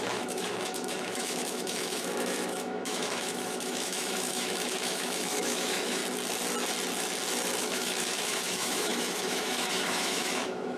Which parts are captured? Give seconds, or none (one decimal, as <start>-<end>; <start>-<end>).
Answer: 6.0-7.6